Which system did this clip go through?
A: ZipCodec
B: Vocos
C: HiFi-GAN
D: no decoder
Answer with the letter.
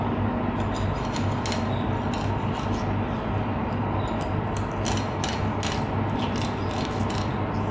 D